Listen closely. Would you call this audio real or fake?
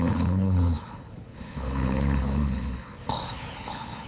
fake